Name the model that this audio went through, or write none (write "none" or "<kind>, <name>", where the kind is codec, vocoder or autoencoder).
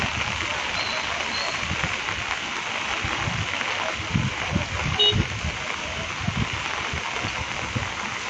none